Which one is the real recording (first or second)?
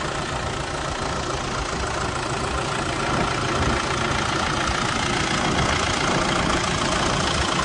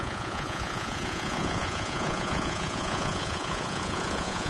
first